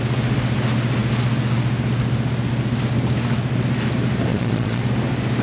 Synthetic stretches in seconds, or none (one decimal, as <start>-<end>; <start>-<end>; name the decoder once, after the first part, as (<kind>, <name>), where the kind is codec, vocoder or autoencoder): 4.3-4.8 (vocoder, Vocos)